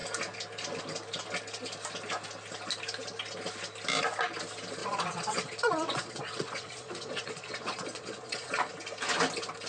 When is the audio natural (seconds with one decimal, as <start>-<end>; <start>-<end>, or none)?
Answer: 0.0-4.8; 8.7-9.7